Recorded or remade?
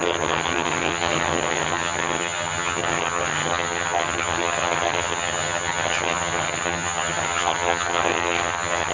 remade